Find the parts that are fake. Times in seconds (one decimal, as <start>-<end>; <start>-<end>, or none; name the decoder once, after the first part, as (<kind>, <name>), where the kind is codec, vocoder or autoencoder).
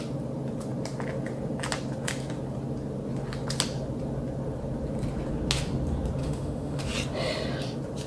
6.2-6.8 (autoencoder, DAC-VAE)